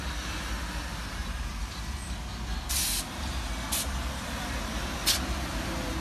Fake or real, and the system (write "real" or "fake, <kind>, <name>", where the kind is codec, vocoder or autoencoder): real